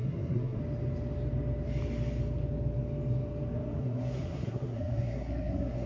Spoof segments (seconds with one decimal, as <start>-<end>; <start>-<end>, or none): 0.0-0.6; 3.8-5.9